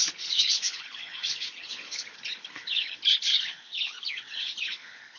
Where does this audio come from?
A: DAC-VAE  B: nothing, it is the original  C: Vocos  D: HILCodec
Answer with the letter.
D